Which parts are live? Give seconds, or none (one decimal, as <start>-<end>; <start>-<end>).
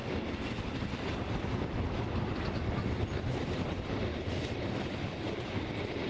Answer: 0.0-6.1